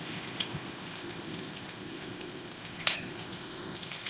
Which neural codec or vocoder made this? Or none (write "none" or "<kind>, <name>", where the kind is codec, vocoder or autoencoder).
codec, ZipCodec